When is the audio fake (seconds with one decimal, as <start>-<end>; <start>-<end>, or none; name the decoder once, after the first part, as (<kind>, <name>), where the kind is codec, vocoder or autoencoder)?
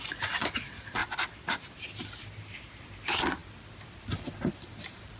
none